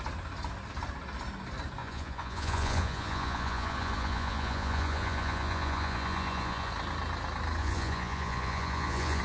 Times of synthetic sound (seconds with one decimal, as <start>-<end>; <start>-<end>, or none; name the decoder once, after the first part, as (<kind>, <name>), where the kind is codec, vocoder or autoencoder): 1.8-6.7 (vocoder, Vocos); 7.6-9.2